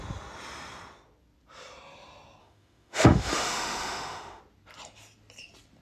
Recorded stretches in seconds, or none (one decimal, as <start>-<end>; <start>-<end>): 0.0-2.4; 4.4-5.8